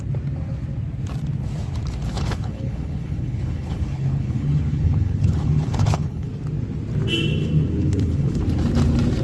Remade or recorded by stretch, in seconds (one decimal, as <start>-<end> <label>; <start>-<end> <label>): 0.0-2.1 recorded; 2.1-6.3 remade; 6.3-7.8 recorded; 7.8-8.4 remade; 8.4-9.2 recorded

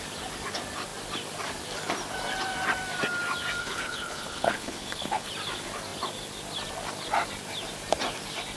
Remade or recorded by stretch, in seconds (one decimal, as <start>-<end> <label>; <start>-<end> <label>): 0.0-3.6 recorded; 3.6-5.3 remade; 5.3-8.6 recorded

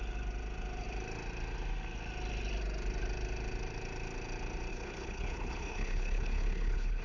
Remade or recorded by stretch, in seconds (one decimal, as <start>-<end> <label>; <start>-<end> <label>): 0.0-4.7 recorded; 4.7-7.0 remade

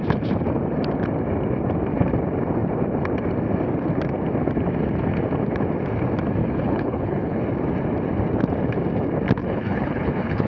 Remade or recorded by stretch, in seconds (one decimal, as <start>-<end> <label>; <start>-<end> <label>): 0.0-6.4 recorded; 6.4-7.4 remade; 7.4-9.4 recorded; 9.4-10.5 remade

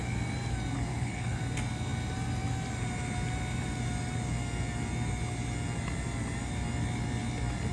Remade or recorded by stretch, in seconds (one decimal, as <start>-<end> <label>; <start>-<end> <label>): 0.0-0.9 recorded; 0.9-1.4 remade; 1.4-7.7 recorded

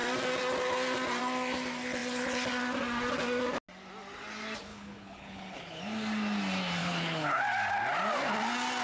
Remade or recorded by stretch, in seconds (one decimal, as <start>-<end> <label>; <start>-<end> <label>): 0.0-4.7 recorded; 4.7-5.8 remade; 5.8-6.8 recorded; 6.8-7.4 remade; 7.4-8.8 recorded